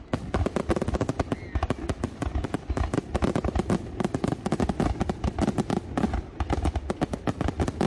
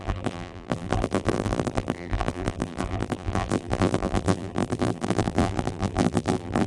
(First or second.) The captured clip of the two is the first